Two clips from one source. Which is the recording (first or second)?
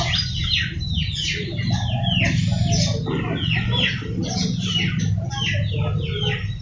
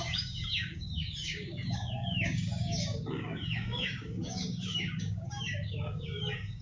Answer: first